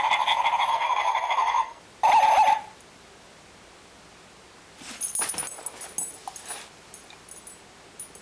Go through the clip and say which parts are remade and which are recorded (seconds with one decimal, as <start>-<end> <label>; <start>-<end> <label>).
0.0-0.7 recorded; 0.7-1.8 remade; 1.8-8.2 recorded